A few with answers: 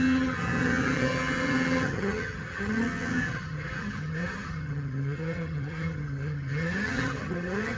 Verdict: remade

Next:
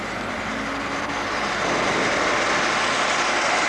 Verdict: recorded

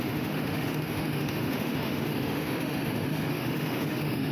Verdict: remade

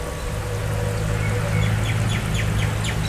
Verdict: recorded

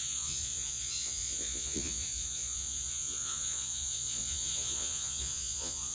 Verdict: remade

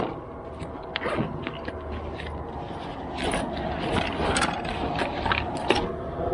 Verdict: recorded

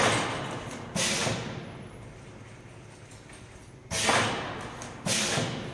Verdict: recorded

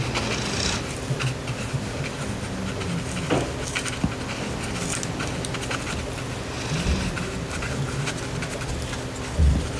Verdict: recorded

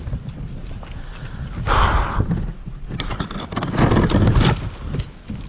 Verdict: recorded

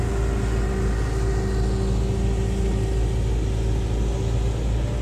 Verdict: recorded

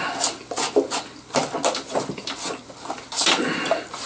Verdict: recorded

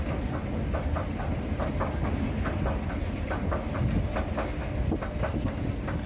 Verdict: recorded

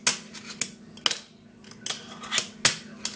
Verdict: recorded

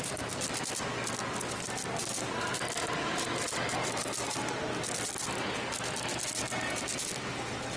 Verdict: recorded